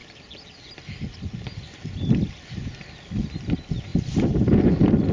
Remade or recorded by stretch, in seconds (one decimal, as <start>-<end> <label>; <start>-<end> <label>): 0.0-5.1 recorded